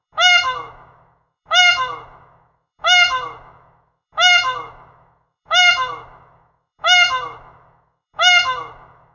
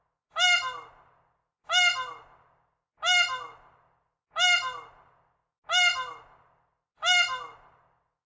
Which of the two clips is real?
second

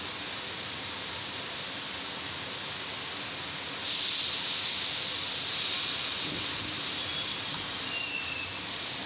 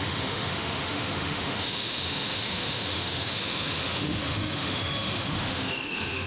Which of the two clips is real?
first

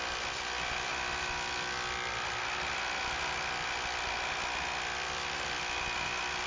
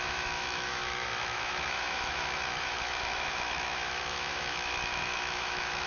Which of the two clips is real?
first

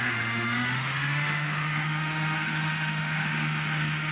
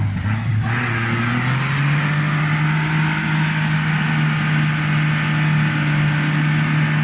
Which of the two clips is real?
second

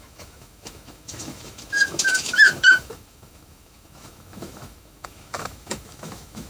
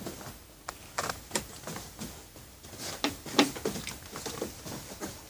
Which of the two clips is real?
second